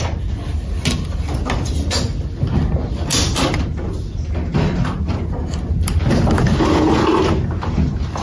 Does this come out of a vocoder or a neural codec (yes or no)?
no